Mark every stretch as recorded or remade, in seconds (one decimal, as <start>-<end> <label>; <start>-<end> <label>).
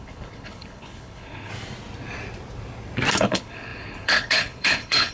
0.0-1.5 remade; 1.5-3.1 recorded; 3.1-5.1 remade